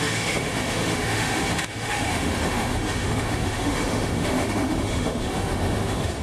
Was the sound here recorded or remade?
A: remade